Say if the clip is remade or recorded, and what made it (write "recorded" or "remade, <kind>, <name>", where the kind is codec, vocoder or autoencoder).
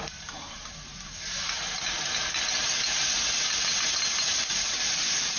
recorded